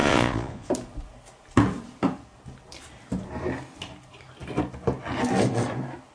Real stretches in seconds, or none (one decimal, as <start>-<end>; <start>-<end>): 0.7-6.1